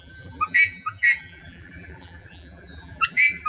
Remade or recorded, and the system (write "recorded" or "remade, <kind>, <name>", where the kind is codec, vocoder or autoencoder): remade, vocoder, BigVGAN v2